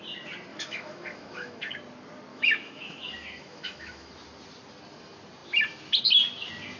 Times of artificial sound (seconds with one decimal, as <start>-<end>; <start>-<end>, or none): 0.5-1.7; 2.3-4.1